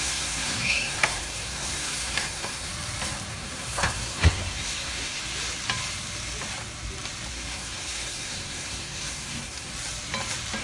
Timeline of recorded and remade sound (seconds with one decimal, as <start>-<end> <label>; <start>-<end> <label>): 0.0-2.7 remade; 2.7-3.3 recorded; 3.3-5.2 remade; 5.2-7.3 recorded; 7.3-9.7 remade; 9.7-10.6 recorded